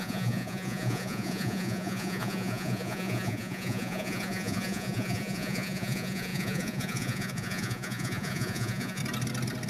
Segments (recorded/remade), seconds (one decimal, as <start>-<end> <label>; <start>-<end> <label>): 0.0-9.0 remade; 9.0-9.7 recorded